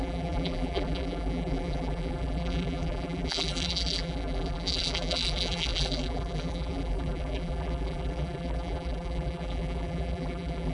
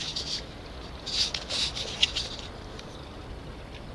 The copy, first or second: first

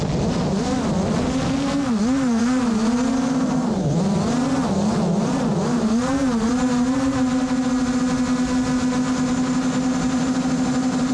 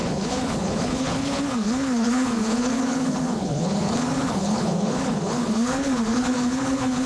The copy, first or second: second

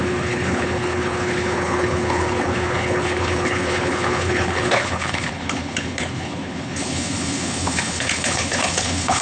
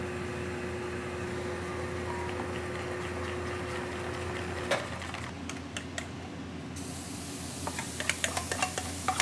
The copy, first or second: first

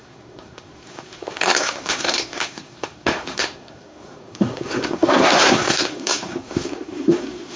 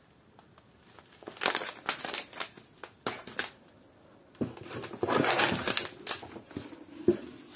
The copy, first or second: first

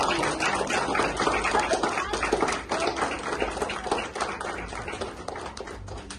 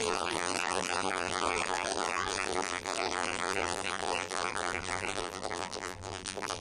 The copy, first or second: second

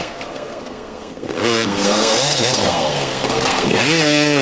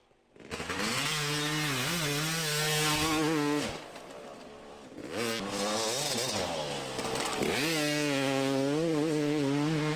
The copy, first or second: first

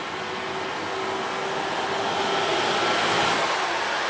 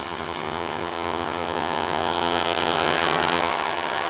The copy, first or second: second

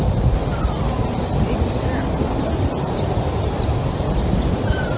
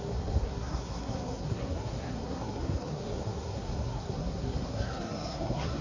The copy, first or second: second